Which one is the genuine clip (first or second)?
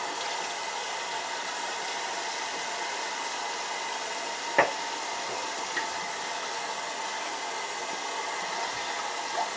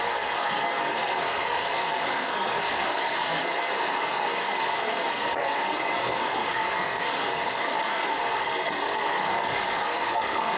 first